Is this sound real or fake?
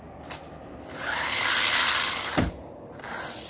real